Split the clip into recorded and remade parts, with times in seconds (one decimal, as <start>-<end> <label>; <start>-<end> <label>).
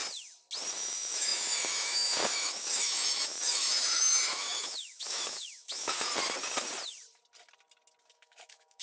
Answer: 0.0-0.7 recorded; 0.7-6.1 remade; 6.1-8.1 recorded; 8.1-8.8 remade